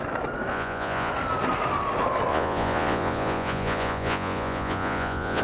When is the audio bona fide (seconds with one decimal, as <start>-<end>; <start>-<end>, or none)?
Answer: 0.0-0.5; 1.1-2.3

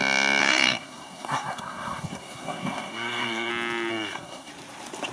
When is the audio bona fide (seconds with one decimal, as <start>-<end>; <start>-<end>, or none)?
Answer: 0.0-0.4; 3.5-3.9; 4.5-5.1